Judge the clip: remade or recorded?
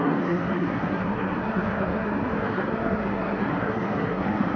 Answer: remade